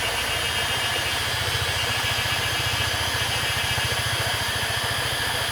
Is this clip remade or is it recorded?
recorded